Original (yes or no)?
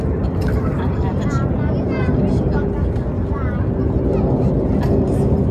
yes